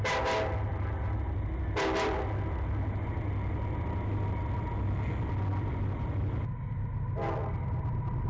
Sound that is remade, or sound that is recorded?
recorded